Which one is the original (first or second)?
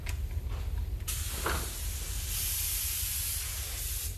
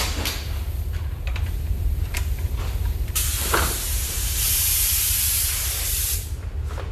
first